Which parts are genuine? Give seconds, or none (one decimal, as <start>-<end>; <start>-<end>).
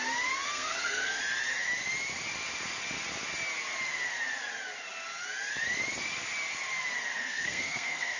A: 0.0-0.5; 1.2-7.1